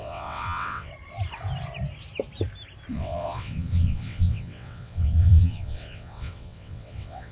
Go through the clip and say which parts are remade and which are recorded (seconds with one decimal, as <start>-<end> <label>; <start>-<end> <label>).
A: 0.0-0.9 remade; 0.9-2.9 recorded; 2.9-7.3 remade